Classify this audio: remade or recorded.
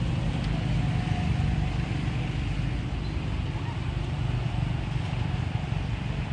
recorded